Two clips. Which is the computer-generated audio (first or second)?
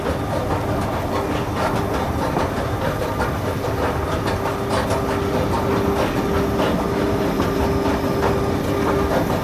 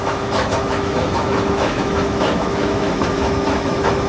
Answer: second